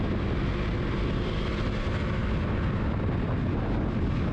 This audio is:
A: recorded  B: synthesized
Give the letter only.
A